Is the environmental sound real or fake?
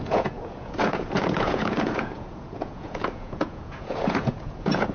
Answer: fake